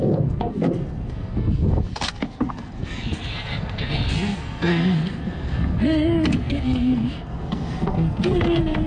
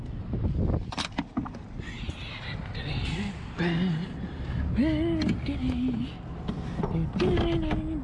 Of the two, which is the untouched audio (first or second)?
second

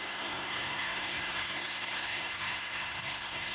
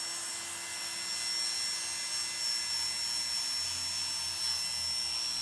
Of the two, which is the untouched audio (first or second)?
second